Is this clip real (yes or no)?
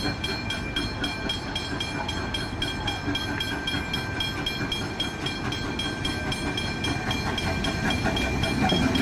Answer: yes